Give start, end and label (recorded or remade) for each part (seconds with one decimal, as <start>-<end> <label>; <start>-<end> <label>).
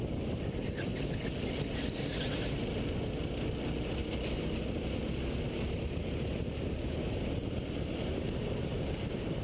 0.0-9.4 recorded